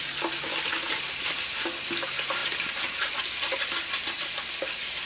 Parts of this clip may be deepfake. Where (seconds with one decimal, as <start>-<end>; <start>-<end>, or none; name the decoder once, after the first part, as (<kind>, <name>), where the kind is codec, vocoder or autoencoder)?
none